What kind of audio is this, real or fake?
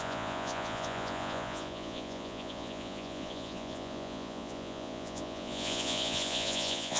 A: fake